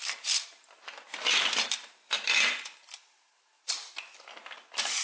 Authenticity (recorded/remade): recorded